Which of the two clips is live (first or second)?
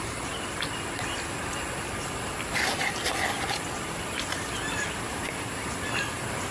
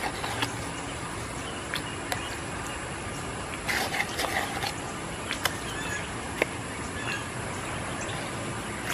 second